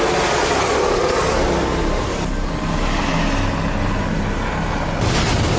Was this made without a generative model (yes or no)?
yes